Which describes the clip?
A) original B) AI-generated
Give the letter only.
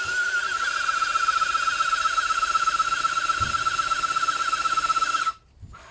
A